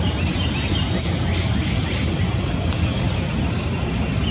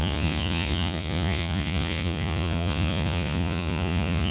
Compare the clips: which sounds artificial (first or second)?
second